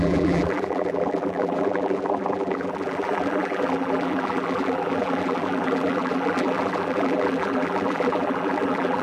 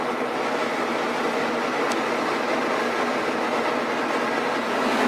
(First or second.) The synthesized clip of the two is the first